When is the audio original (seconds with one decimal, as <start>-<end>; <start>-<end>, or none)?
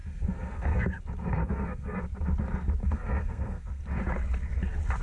1.0-1.4; 2.0-2.8; 3.8-5.0